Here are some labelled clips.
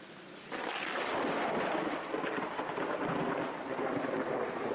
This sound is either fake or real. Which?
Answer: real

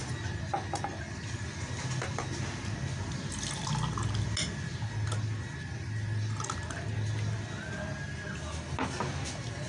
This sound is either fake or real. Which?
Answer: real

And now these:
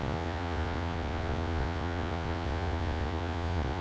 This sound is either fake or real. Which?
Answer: fake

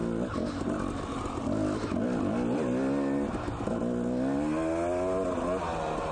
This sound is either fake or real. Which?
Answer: real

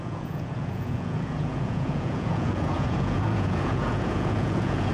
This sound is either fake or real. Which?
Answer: fake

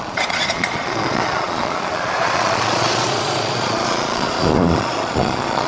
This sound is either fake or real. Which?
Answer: fake